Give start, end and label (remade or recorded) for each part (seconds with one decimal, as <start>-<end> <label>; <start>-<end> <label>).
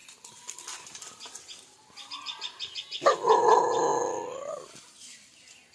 0.0-5.7 recorded